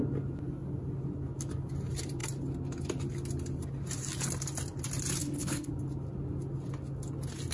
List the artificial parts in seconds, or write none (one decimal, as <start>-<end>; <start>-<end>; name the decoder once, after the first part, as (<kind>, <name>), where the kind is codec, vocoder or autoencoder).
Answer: 5.2-5.7 (codec, HILCodec)